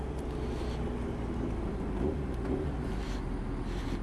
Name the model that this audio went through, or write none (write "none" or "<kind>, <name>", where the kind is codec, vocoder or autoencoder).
none